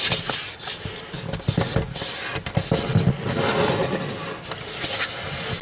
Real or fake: real